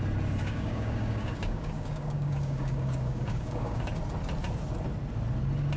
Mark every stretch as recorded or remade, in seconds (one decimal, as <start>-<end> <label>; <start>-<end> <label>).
0.0-0.4 recorded; 0.4-3.9 remade; 3.9-5.8 recorded